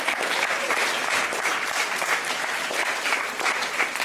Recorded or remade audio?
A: remade